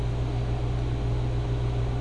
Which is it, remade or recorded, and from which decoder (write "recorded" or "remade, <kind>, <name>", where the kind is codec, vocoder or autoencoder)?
recorded